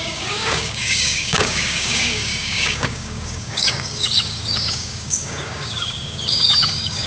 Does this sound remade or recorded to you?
remade